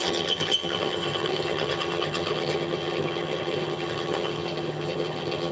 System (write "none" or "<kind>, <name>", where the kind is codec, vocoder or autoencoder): vocoder, HiFi-GAN